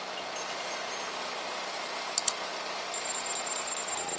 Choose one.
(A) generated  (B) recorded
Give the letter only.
B